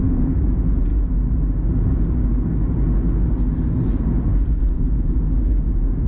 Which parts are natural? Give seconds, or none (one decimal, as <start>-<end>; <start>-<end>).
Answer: 0.9-4.6